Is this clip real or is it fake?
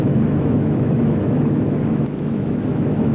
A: fake